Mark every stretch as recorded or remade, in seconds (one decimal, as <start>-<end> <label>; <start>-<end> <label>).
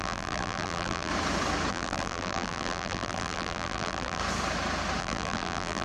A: 0.0-1.1 remade; 1.1-1.7 recorded; 1.7-4.2 remade; 4.2-5.0 recorded; 5.0-5.8 remade